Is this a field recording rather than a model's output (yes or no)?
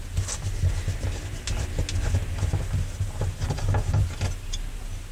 yes